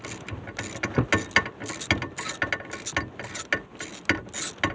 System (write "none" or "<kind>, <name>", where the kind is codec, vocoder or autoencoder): none